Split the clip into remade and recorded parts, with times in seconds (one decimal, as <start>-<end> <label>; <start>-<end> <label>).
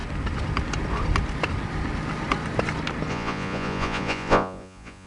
0.0-3.1 recorded; 3.1-5.1 remade